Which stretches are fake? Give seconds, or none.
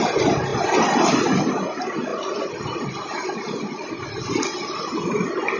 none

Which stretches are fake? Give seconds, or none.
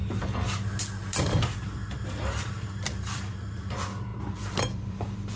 0.8-5.3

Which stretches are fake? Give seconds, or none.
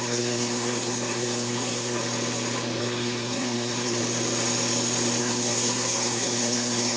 0.0-2.0; 2.8-4.0; 5.2-7.0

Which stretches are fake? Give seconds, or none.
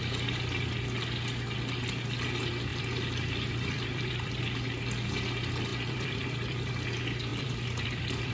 2.7-4.4; 5.7-6.7; 7.3-8.3